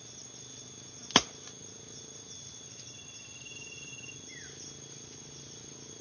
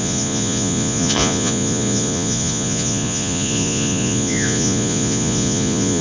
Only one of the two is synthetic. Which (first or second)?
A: second